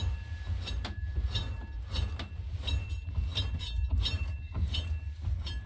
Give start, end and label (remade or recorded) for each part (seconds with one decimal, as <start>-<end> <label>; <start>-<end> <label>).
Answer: 0.0-5.7 recorded